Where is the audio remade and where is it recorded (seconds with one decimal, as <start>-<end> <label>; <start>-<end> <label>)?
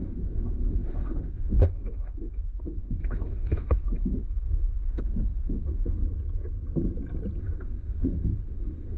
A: 0.0-6.0 remade; 6.0-7.4 recorded; 7.4-9.0 remade